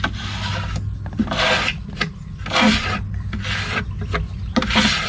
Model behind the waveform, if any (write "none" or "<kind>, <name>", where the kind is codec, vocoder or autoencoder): none